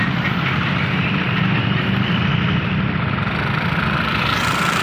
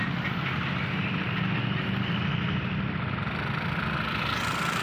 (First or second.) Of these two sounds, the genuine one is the second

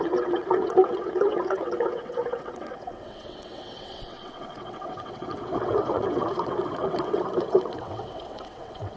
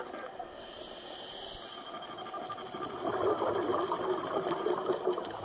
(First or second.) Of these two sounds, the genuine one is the second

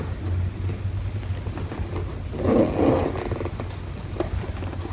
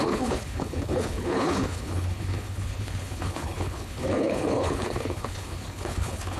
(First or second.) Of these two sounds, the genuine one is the first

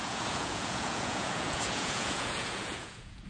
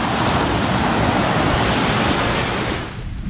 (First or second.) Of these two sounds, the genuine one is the second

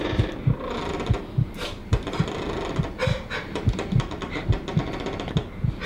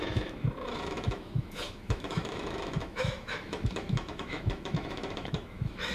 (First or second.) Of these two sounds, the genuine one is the first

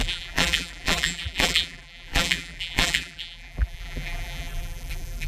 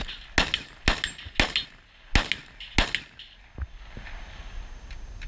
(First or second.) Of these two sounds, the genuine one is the second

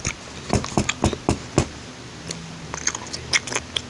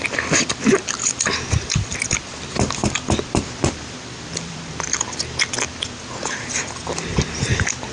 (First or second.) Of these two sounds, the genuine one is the first